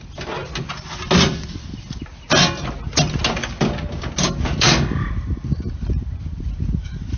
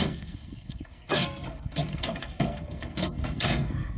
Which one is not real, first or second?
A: second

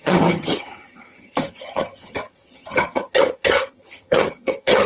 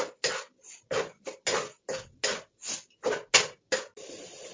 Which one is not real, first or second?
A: first